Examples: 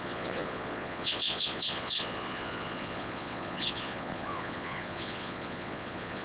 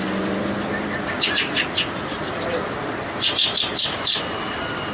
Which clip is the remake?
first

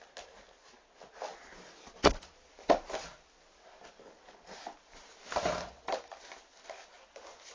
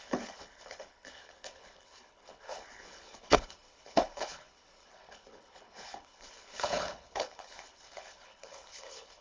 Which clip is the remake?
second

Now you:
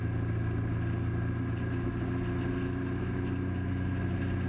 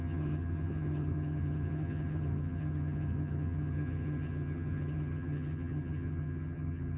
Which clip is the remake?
second